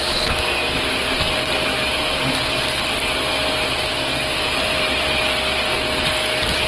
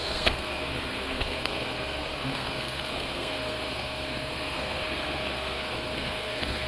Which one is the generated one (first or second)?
second